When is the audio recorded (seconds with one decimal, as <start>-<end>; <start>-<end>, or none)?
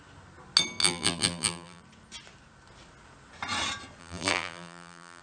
0.0-0.8; 1.8-4.0